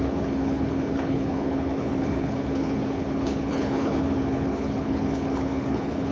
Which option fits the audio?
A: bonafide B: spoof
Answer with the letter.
B